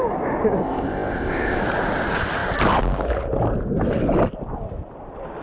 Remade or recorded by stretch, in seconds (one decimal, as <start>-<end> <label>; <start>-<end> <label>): 0.0-0.6 recorded; 0.6-1.6 remade; 1.6-5.4 recorded